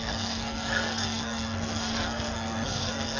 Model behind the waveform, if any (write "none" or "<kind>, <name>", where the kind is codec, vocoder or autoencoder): codec, SNAC